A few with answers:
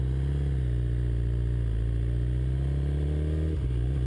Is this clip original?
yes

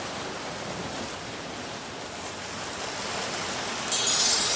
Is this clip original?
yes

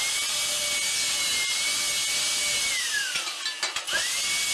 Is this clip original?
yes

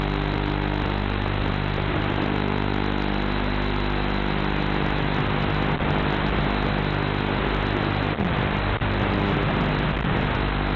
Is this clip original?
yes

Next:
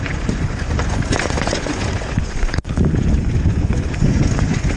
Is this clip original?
no